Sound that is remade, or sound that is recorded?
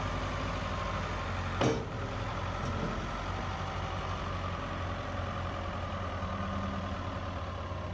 recorded